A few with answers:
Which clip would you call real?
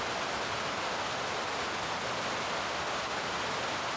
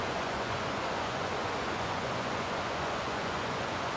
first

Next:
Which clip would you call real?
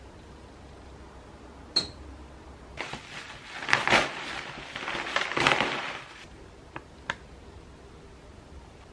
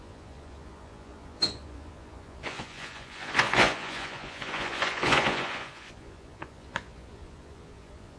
first